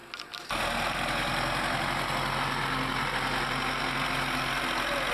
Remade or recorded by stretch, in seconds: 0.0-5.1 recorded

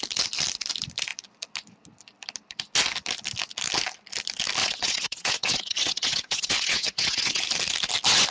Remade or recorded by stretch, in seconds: 0.0-4.6 recorded; 4.6-7.4 remade; 7.4-8.3 recorded

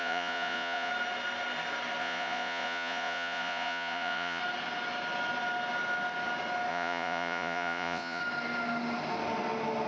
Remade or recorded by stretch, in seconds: 0.0-0.9 remade; 0.9-2.0 recorded; 2.0-4.4 remade; 4.4-6.7 recorded; 6.7-8.2 remade; 8.2-9.9 recorded